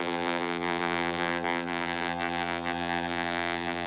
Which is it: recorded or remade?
remade